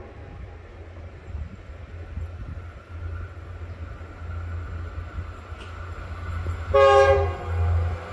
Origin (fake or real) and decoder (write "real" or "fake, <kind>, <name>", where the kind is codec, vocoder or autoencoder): real